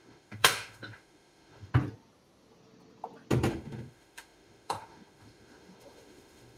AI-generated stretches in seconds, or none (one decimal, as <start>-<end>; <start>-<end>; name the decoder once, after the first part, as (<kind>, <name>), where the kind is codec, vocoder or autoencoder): 0.0-1.7 (autoencoder, DAC-VAE); 3.5-6.6